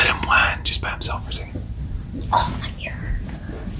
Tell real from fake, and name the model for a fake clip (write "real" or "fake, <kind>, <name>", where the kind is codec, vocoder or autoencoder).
real